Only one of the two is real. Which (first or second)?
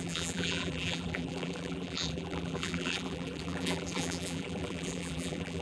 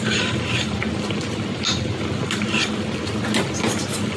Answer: second